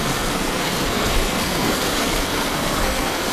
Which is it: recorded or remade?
remade